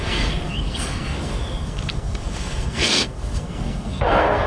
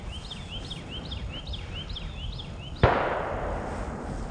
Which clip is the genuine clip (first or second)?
second